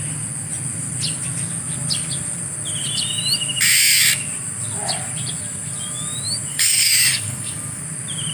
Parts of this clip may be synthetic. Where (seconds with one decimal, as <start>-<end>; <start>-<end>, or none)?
6.5-7.8